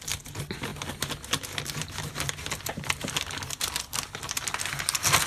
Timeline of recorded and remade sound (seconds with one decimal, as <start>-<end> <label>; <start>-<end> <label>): 0.0-5.3 recorded